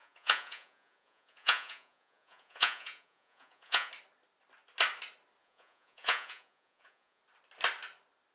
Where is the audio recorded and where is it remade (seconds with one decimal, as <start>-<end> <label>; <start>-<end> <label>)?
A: 0.0-3.9 remade; 3.9-5.4 recorded; 5.4-7.2 remade; 7.2-8.3 recorded